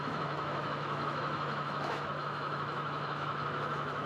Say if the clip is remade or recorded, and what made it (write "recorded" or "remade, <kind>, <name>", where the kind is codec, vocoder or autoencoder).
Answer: remade, autoencoder, DAC-VAE